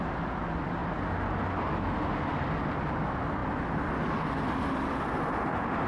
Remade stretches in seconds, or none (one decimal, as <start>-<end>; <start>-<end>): none